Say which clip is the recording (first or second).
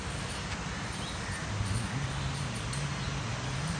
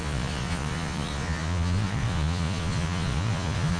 first